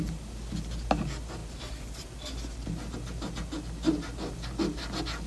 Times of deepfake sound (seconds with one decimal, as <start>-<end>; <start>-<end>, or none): none